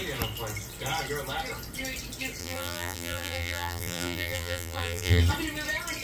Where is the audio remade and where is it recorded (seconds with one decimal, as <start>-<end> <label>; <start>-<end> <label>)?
0.0-2.4 recorded; 2.4-5.2 remade; 5.2-6.0 recorded